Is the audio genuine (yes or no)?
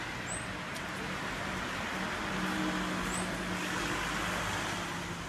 yes